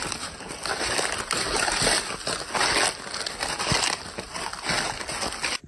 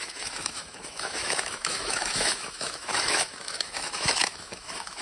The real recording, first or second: first